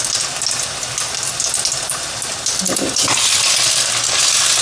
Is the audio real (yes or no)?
yes